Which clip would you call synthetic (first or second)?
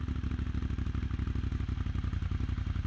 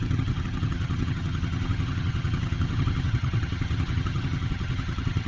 second